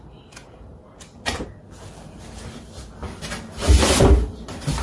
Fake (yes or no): no